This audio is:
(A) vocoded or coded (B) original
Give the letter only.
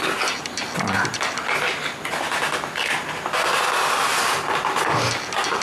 B